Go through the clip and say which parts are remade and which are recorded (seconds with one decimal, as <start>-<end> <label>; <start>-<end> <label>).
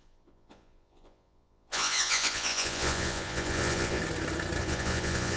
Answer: 0.0-4.0 remade; 4.0-4.6 recorded; 4.6-5.4 remade